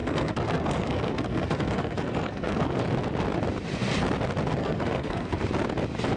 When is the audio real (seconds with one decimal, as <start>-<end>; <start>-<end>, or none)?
2.8-4.6; 5.4-6.2